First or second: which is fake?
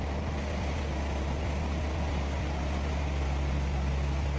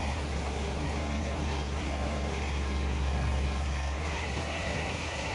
second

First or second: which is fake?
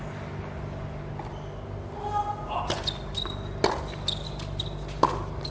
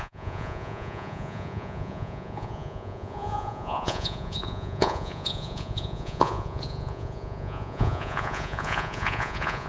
second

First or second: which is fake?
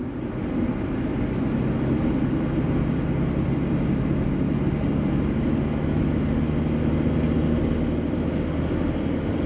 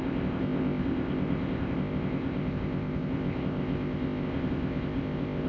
second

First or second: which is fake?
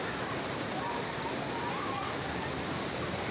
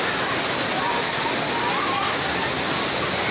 first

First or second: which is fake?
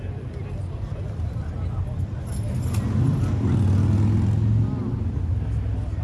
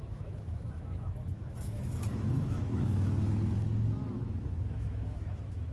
second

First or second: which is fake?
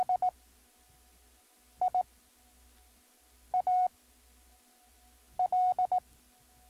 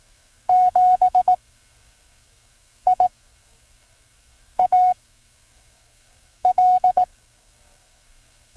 second